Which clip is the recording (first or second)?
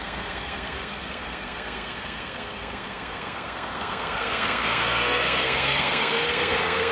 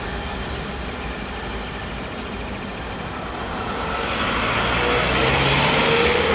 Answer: second